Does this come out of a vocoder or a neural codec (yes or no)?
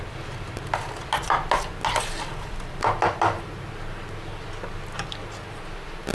no